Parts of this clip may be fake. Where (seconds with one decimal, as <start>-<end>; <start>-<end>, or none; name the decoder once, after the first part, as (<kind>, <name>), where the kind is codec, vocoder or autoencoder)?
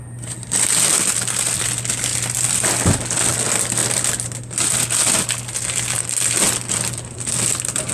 none